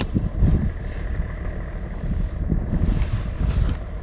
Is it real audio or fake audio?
fake